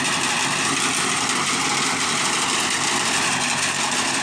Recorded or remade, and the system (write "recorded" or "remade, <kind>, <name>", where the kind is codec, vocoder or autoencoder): recorded